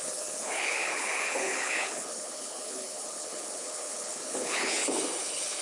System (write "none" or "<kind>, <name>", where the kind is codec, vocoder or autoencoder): codec, HILCodec